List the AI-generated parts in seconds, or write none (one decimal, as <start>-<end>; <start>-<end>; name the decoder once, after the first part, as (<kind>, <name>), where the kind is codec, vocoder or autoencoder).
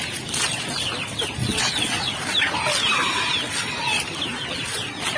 1.4-2.1 (vocoder, WaveNeXt)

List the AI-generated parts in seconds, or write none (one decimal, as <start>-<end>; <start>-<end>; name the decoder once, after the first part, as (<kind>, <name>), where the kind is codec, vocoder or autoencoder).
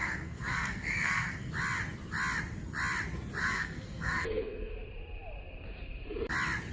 0.0-1.5 (codec, SNAC); 3.4-4.7